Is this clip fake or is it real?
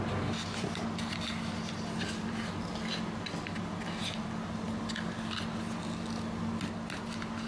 real